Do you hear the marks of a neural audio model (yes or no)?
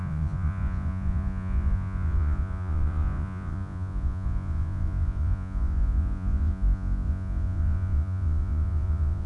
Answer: yes